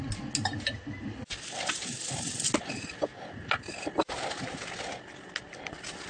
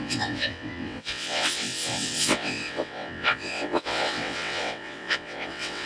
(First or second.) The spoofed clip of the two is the second